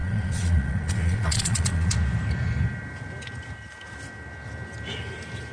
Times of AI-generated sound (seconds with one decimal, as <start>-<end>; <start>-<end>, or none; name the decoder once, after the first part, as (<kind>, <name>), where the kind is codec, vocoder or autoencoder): 0.0-1.9 (vocoder, Vocos)